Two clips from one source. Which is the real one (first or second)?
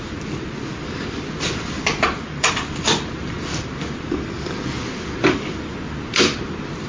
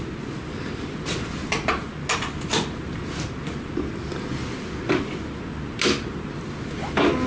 second